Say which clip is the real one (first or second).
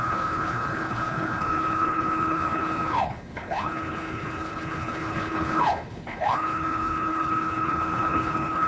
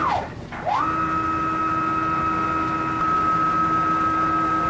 second